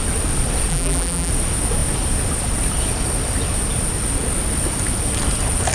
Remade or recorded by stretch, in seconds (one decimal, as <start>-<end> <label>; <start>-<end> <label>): 0.0-0.7 recorded; 0.7-1.3 remade; 1.3-5.7 recorded